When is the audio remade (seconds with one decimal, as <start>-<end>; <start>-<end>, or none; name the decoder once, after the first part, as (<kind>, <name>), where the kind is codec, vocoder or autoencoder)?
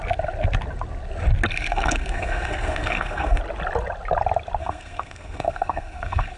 1.5-3.4 (codec, SNAC); 4.6-6.4